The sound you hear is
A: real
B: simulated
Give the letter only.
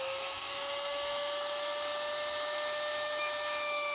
B